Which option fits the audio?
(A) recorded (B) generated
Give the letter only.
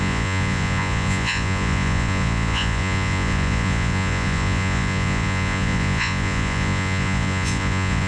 B